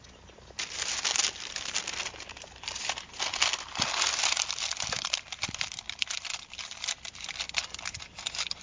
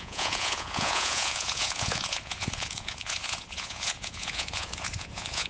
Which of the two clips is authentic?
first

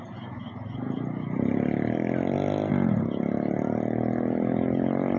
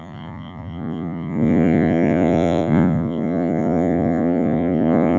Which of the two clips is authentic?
first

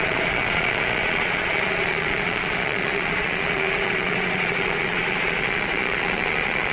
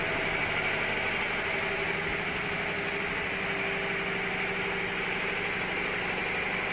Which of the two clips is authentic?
second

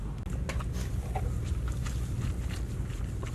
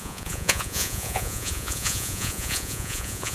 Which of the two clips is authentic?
first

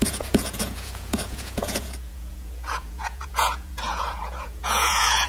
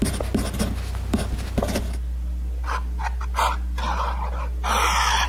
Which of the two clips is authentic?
second